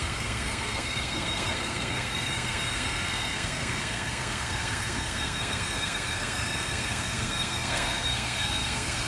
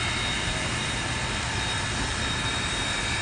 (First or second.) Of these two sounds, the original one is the second